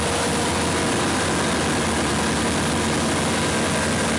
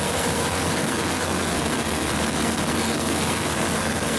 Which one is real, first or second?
first